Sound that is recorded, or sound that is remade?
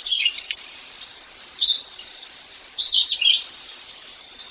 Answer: remade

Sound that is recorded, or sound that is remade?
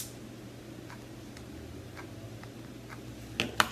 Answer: recorded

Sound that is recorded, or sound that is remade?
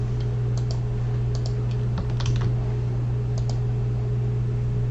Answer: remade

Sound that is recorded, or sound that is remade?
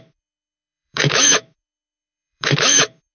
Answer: remade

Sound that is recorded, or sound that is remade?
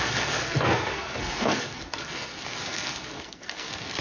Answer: remade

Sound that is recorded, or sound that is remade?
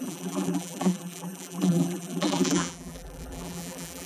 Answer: remade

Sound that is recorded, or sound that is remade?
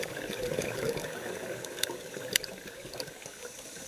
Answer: remade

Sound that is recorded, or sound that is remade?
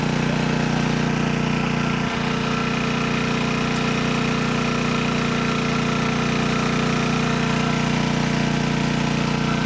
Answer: recorded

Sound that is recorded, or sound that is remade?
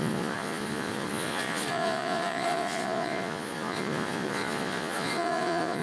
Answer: remade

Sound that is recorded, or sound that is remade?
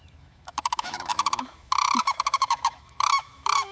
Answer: remade